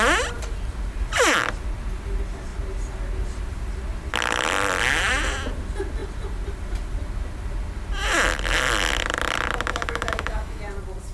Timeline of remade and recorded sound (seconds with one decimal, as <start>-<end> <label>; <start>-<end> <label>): 0.0-9.7 recorded; 9.7-10.6 remade; 10.6-11.1 recorded

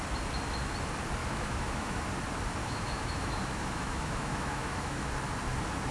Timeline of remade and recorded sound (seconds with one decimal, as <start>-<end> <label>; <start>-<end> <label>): 0.0-1.2 recorded; 1.2-2.0 remade; 2.0-2.6 recorded; 2.6-5.1 remade; 5.1-5.9 recorded

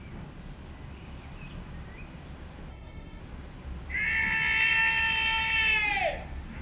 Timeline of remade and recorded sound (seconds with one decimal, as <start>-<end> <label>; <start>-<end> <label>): 0.0-2.7 recorded; 2.7-3.2 remade; 3.2-6.6 recorded

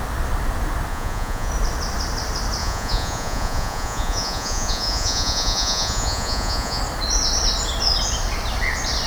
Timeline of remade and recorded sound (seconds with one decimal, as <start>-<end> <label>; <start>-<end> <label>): 0.0-0.9 recorded; 0.9-1.5 remade; 1.5-2.6 recorded; 2.6-6.8 remade; 6.8-9.1 recorded